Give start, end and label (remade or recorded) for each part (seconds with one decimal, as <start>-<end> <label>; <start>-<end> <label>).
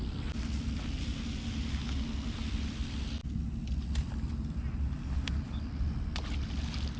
0.0-7.0 recorded